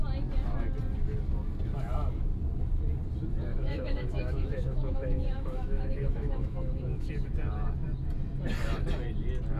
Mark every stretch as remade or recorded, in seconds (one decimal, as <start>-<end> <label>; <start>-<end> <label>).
0.0-3.5 recorded; 3.5-7.1 remade; 7.1-9.6 recorded